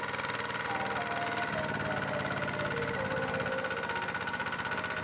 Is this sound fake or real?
real